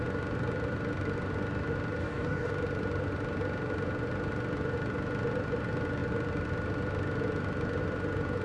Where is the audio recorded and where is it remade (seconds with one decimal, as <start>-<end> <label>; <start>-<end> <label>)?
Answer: 0.0-2.0 recorded; 2.0-2.5 remade; 2.5-8.4 recorded